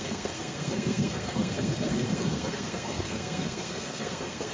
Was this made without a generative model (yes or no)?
no